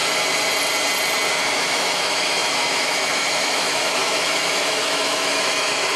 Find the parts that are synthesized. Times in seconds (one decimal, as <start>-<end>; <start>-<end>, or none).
1.3-6.0